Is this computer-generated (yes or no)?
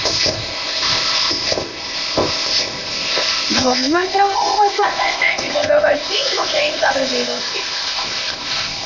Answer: yes